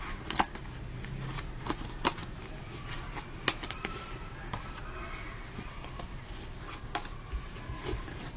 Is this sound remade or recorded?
recorded